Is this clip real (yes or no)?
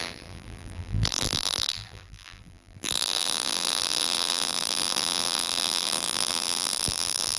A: no